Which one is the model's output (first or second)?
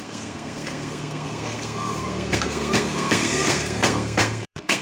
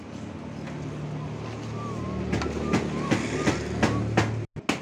first